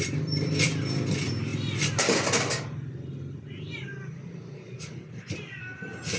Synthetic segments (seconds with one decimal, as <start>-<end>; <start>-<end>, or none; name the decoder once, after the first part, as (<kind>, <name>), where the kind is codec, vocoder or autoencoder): none